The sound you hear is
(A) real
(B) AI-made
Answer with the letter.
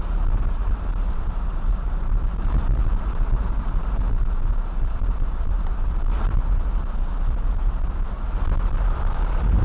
B